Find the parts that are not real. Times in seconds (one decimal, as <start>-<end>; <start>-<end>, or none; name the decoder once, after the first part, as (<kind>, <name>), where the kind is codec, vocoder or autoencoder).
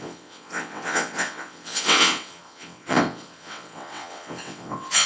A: 0.0-5.1 (vocoder, WaveNeXt)